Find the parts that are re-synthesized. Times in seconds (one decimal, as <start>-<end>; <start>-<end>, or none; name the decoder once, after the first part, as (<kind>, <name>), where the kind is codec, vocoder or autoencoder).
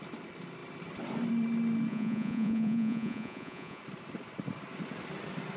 1.9-3.8 (vocoder, Vocos)